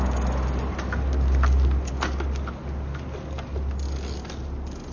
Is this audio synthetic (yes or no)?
no